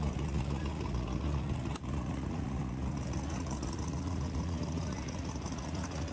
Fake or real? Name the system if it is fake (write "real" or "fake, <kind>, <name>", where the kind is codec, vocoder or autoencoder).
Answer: fake, vocoder, Vocos